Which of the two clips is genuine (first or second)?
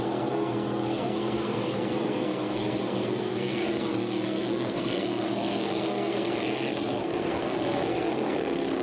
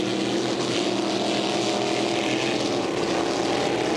second